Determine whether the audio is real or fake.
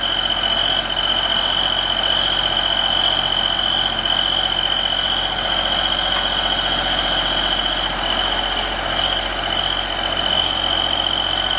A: real